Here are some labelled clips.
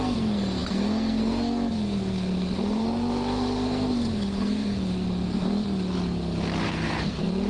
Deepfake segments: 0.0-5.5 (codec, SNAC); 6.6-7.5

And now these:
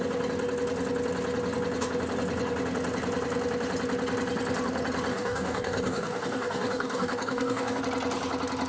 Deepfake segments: 5.1-7.8 (codec, DAC)

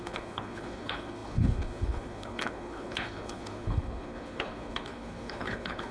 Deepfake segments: 0.0-5.9 (codec, HILCodec)

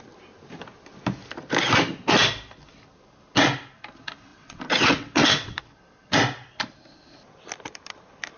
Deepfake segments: 4.3-5.6 (vocoder, WaveNeXt)